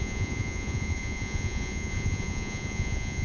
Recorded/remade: remade